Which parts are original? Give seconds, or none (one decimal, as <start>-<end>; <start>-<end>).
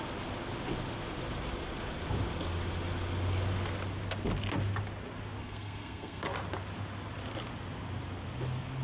0.0-5.4; 6.2-8.8